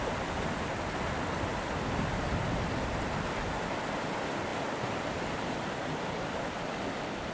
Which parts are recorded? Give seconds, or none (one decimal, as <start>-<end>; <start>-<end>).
0.0-7.3